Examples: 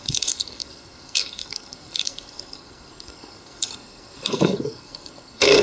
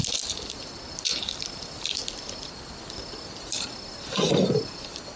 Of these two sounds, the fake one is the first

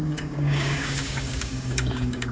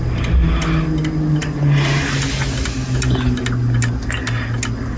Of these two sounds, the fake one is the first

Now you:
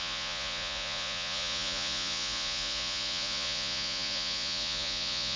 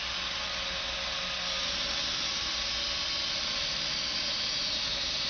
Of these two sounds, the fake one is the first